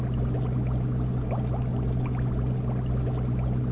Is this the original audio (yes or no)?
yes